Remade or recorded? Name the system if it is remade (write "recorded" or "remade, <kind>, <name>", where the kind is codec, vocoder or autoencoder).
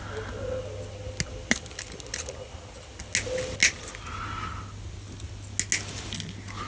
recorded